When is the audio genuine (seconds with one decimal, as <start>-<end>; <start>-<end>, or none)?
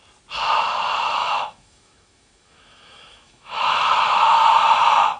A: 0.0-1.2; 4.3-5.2